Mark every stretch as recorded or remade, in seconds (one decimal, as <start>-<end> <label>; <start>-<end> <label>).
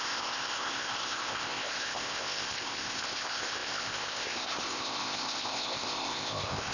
0.0-6.7 remade